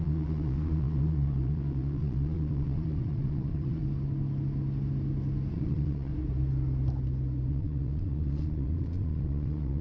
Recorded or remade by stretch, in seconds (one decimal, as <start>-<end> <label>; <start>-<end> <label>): 0.0-3.8 remade; 3.8-5.5 recorded; 5.5-6.1 remade; 6.1-7.5 recorded; 7.5-9.8 remade